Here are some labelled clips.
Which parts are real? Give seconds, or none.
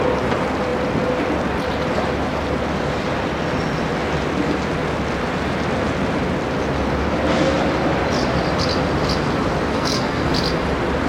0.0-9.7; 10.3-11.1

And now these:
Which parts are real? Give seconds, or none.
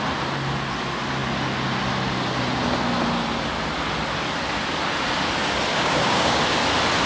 0.0-5.7; 6.4-7.1